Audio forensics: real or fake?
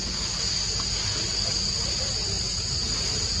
real